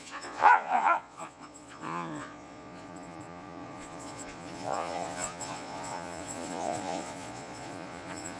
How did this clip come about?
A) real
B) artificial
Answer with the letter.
B